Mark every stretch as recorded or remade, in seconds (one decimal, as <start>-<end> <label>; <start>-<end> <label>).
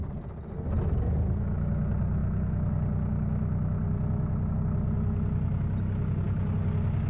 0.0-7.1 recorded